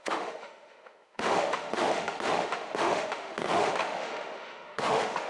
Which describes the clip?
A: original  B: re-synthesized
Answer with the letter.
B